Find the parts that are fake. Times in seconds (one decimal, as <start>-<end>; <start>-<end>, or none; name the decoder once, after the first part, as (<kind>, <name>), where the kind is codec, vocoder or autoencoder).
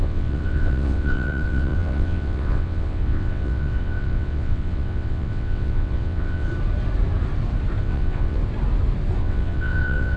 0.0-6.5 (vocoder, WaveNeXt); 7.8-8.4; 9.2-10.2